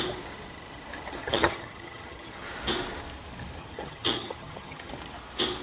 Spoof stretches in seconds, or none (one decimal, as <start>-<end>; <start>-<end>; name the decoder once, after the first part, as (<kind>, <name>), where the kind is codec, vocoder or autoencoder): 1.2-2.5 (vocoder, HiFi-GAN); 3.6-4.9